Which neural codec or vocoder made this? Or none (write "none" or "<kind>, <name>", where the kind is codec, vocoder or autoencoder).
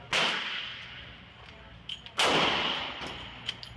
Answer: none